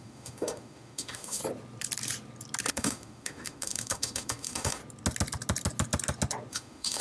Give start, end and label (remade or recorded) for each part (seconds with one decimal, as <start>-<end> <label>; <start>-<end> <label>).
0.0-1.4 remade; 1.4-2.7 recorded; 2.7-4.8 remade; 4.8-6.5 recorded; 6.5-7.0 remade